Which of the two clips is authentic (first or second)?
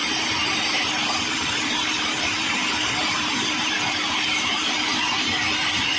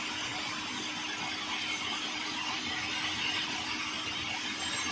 second